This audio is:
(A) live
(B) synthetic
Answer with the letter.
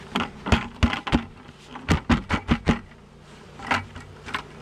A